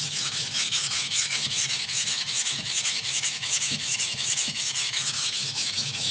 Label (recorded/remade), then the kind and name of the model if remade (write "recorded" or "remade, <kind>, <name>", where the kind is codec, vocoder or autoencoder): remade, autoencoder, DAC-VAE